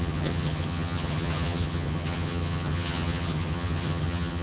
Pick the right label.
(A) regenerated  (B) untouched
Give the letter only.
A